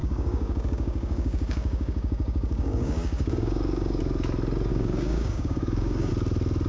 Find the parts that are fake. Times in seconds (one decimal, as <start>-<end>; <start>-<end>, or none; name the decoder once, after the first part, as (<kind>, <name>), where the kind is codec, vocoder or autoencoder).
0.0-4.0 (codec, DAC); 4.7-6.1